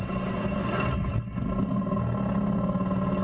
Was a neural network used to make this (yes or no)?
no